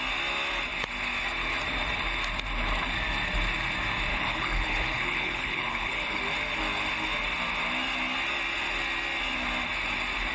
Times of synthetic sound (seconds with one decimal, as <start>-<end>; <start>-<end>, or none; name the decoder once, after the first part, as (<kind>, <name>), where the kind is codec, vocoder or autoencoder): 4.1-6.2 (codec, HILCodec)